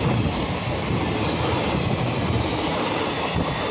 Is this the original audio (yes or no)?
yes